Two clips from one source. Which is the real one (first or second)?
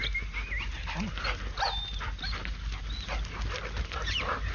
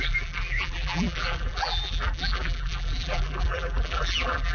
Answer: first